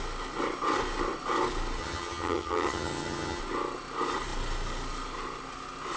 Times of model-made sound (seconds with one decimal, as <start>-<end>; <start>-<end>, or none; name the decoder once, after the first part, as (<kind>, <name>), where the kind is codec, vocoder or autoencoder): 1.8-3.4 (vocoder, HiFi-GAN)